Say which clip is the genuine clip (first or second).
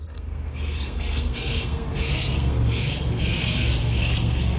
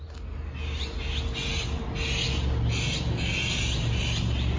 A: second